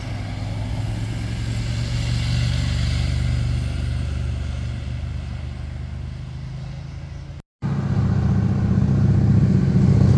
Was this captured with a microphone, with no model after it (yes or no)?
yes